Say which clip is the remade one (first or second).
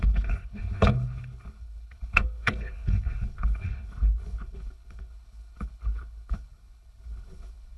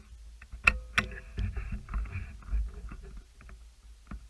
first